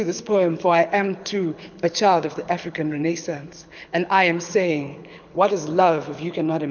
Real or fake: fake